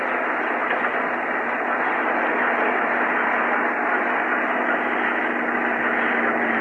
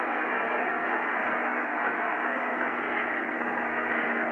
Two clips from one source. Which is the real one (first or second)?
first